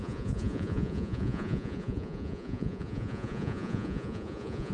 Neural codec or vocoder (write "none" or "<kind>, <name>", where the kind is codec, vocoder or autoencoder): vocoder, Vocos